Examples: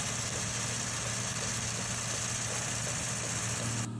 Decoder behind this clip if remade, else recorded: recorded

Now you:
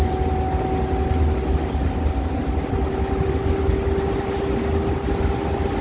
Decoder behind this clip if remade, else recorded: recorded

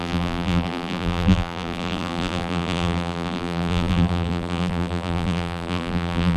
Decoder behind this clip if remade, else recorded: remade, vocoder, BigVGAN v2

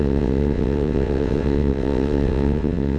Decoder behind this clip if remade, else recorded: remade, vocoder, WaveNeXt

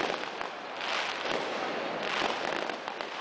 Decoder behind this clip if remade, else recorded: recorded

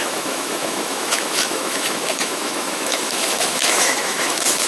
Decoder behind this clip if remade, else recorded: remade, autoencoder, DAC-VAE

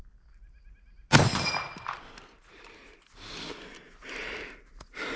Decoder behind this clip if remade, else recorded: recorded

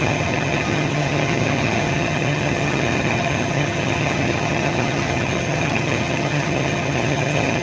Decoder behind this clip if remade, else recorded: remade, vocoder, HiFi-GAN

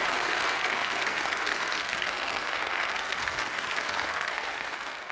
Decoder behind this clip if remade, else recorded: remade, codec, SNAC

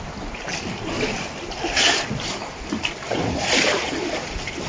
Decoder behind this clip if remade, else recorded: recorded